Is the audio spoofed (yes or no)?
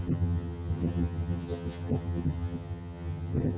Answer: yes